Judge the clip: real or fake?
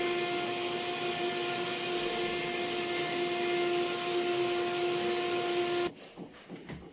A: real